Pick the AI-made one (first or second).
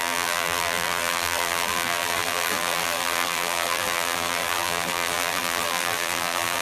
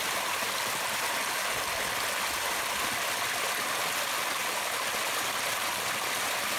first